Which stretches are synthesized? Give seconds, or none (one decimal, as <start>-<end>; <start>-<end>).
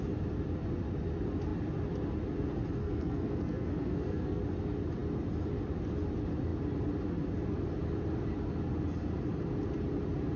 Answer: 2.8-4.4